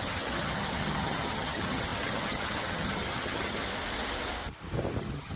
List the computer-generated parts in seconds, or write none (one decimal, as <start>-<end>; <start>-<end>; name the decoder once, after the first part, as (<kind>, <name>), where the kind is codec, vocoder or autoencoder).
0.0-3.6 (vocoder, HiFi-GAN); 5.0-5.4